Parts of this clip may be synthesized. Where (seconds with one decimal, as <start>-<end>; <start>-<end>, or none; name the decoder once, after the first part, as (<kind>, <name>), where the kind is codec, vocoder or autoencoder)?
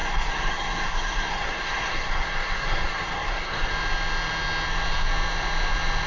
0.0-3.7 (codec, SNAC)